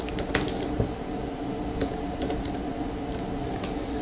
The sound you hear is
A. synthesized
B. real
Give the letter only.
B